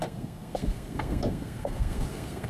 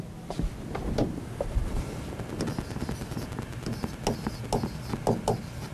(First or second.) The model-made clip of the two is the first